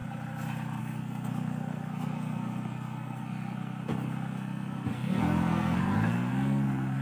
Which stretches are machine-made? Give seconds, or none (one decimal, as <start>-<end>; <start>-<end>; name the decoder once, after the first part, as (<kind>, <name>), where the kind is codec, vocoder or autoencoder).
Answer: 0.8-7.0 (codec, SNAC)